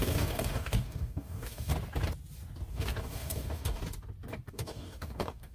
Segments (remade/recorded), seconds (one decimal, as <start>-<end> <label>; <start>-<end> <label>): 0.0-1.7 remade; 1.7-2.7 recorded; 2.7-3.8 remade; 3.8-4.5 recorded; 4.5-5.5 remade